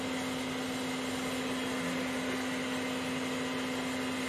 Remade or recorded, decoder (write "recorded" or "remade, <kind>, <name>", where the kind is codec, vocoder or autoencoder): recorded